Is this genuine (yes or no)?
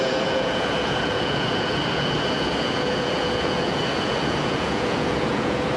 no